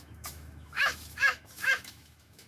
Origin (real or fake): fake